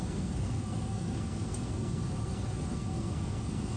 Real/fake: fake